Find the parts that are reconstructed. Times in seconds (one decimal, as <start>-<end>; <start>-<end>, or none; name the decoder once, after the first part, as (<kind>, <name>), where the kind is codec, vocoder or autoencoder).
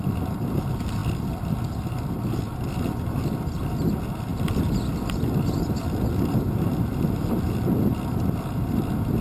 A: none